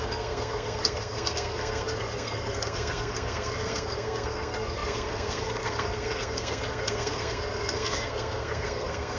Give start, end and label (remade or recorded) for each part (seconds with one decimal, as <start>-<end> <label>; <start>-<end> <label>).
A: 0.0-9.2 remade